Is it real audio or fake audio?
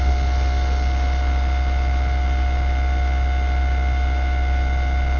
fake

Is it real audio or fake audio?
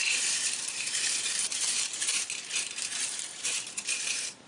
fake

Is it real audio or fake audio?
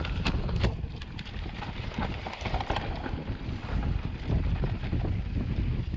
fake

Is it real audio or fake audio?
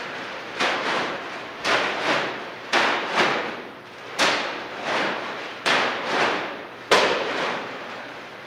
fake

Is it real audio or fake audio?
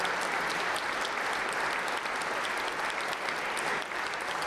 real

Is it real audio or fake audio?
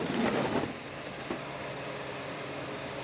fake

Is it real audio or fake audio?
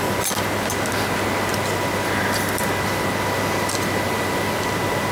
real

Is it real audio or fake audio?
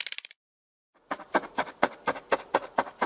real